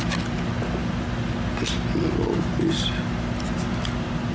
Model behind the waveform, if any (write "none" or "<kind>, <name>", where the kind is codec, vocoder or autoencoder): none